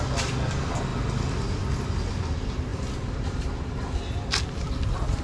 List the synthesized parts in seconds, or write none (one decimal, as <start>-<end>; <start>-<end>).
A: none